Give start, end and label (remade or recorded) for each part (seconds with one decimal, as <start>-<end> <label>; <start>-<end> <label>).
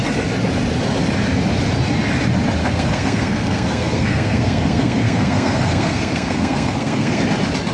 0.0-2.6 recorded; 2.6-7.2 remade; 7.2-7.7 recorded